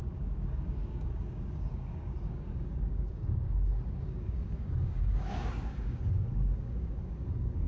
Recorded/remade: remade